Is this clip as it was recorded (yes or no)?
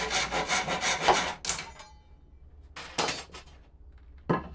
yes